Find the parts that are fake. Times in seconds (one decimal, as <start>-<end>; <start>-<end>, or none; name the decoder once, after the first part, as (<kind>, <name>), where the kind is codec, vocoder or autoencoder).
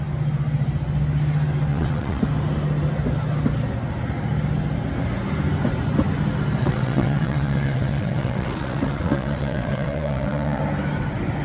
1.7-2.2 (vocoder, WaveNeXt); 6.6-10.6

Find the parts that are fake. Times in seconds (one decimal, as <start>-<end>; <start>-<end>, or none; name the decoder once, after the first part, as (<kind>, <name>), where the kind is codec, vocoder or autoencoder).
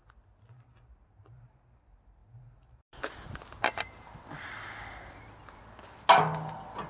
none